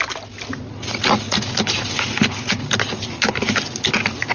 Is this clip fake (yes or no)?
no